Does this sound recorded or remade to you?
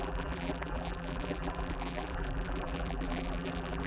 remade